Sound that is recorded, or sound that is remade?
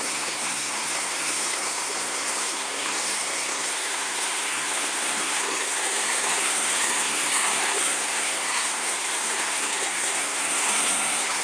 remade